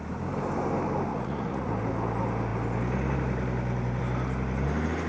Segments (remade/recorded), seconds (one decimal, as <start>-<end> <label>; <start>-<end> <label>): 0.0-1.1 recorded; 1.1-1.7 remade; 1.7-5.1 recorded